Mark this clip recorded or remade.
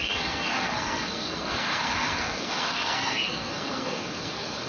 remade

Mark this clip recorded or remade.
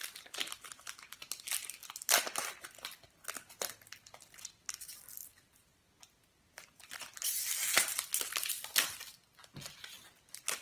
recorded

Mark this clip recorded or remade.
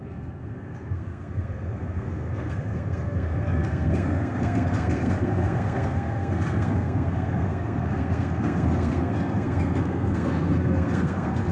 remade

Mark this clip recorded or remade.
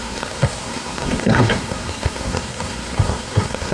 remade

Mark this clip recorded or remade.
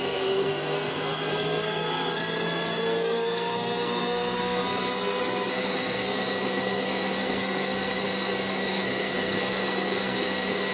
remade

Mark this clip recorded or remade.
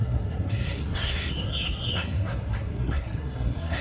remade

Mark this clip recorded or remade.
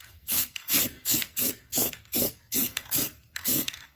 remade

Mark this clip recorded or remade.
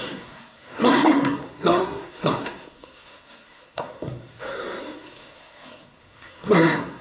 remade